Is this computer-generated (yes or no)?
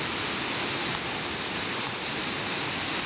no